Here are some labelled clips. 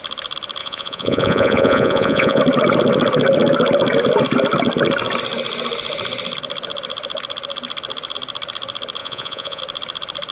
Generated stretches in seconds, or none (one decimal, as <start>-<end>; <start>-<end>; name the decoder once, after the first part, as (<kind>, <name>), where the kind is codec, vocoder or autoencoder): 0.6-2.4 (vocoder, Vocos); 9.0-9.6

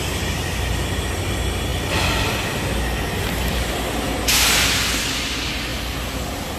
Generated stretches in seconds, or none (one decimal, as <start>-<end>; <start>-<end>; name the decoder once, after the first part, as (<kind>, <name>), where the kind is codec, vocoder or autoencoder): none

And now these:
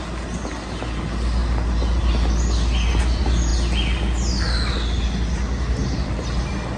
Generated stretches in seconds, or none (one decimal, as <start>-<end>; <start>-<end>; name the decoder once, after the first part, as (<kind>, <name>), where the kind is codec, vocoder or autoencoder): none

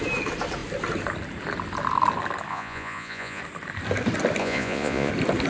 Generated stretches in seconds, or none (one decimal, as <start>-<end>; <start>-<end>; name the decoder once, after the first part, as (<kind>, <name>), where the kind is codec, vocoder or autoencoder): 2.5-3.4 (vocoder, Vocos); 4.4-5.1